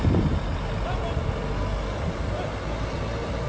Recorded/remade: recorded